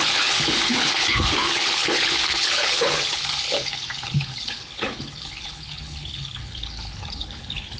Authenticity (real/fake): fake